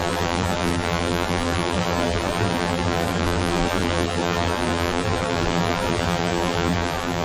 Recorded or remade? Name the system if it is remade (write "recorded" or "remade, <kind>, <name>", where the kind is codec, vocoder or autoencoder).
remade, vocoder, BigVGAN v2